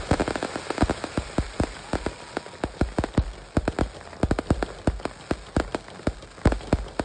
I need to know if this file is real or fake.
real